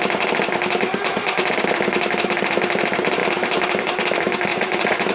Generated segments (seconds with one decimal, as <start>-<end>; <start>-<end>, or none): 4.5-5.1